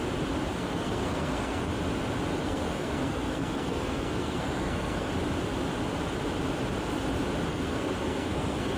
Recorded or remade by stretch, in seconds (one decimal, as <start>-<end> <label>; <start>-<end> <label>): 0.0-0.5 recorded; 0.5-1.7 remade; 1.7-2.4 recorded; 2.4-5.1 remade; 5.1-7.5 recorded; 7.5-8.8 remade